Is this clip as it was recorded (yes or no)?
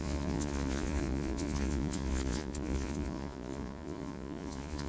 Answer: no